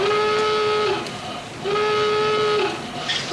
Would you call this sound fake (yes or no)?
no